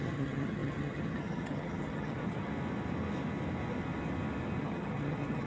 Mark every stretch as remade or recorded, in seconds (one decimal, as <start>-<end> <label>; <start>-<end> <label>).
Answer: 0.0-2.5 remade; 2.5-4.6 recorded; 4.6-5.5 remade